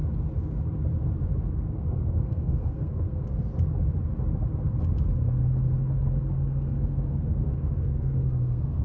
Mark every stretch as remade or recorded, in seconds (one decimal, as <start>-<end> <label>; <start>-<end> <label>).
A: 0.0-1.6 recorded; 1.6-3.5 remade; 3.5-6.1 recorded; 6.1-8.8 remade

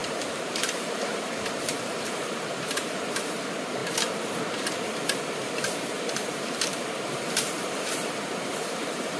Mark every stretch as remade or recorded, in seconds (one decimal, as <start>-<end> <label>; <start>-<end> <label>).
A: 0.0-3.8 remade; 3.8-4.9 recorded; 4.9-9.2 remade

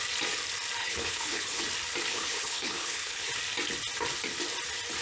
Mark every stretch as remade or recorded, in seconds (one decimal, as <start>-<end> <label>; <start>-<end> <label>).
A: 0.0-0.8 recorded; 0.8-1.6 remade; 1.6-2.1 recorded; 2.1-3.3 remade; 3.3-5.0 recorded

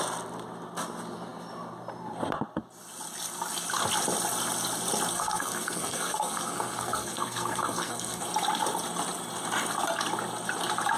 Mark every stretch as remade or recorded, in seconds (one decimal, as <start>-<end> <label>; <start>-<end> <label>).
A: 0.0-5.1 recorded; 5.1-8.2 remade; 8.2-11.0 recorded